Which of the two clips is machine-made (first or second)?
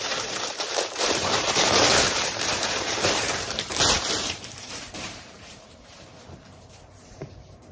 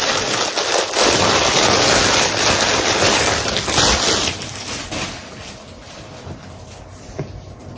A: first